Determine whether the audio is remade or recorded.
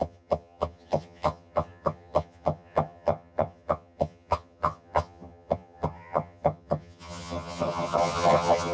remade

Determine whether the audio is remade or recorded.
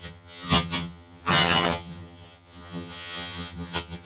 remade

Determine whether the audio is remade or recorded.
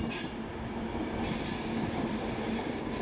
recorded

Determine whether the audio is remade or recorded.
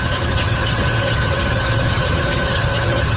remade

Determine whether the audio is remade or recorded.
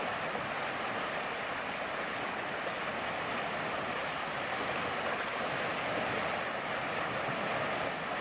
recorded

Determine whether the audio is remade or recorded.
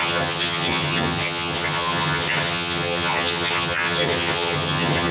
remade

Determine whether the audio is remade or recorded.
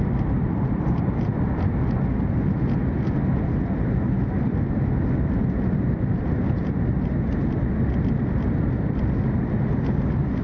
recorded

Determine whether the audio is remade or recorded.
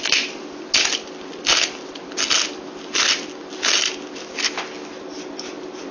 recorded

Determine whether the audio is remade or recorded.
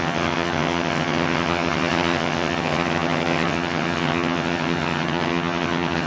remade